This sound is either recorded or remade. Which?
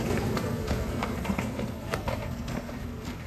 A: remade